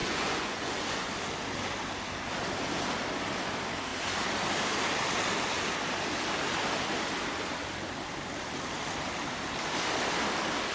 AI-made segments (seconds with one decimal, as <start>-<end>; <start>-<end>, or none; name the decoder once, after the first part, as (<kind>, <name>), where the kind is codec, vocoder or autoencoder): 0.0-1.1 (vocoder, Vocos)